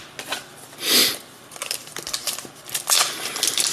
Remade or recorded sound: recorded